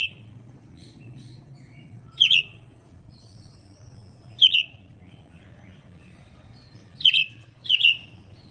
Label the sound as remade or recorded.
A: remade